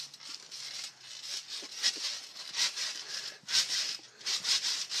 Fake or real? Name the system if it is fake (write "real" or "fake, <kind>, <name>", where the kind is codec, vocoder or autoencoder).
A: real